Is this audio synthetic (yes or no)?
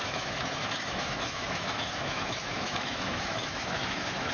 yes